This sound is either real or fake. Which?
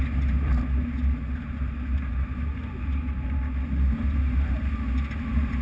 real